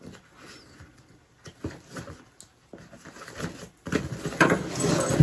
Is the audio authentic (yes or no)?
yes